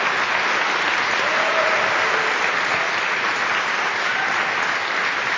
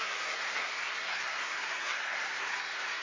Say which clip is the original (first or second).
first